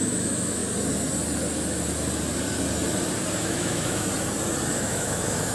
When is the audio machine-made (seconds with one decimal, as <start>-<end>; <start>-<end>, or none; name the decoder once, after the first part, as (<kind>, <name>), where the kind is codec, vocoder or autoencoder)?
0.0-0.6 (autoencoder, DAC-VAE); 3.4-4.1; 4.7-5.5